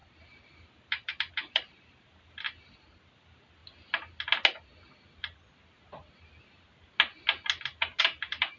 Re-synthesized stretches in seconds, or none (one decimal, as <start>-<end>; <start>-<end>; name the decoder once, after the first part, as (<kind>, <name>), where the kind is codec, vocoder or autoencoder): 0.0-3.6 (vocoder, BigVGAN v2); 8.0-8.6